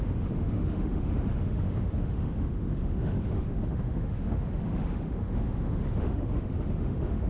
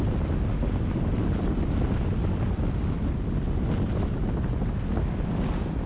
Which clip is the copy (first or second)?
first